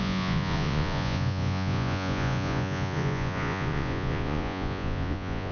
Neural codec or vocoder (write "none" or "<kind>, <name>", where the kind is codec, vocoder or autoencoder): vocoder, Vocos